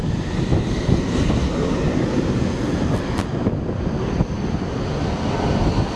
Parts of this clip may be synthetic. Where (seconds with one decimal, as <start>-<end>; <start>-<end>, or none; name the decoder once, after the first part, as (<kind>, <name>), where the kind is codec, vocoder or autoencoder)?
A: none